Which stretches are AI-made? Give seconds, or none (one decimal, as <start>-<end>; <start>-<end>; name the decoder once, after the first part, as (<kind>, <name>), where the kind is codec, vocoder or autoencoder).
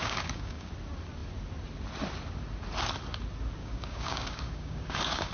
0.0-0.7 (codec, DAC); 3.6-5.3